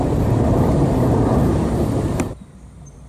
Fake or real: fake